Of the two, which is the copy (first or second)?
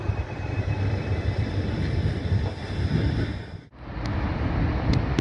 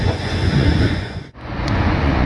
second